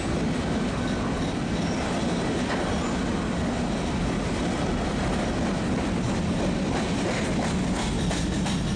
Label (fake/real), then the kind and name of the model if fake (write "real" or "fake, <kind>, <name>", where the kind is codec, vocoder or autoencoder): real